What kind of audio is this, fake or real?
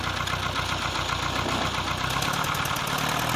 real